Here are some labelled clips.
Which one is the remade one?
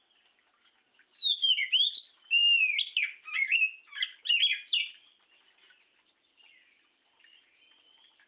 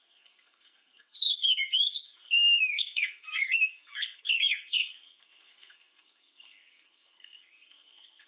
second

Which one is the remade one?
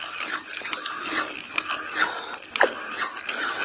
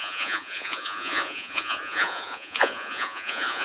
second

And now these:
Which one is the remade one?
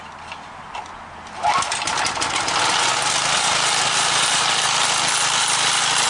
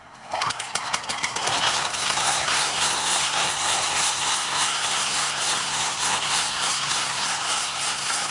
second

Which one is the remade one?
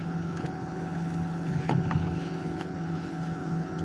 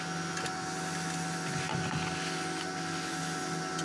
first